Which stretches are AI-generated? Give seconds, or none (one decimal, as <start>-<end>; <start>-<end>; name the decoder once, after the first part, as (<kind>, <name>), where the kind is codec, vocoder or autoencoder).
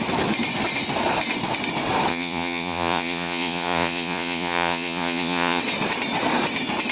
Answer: 2.1-5.6 (vocoder, Vocos)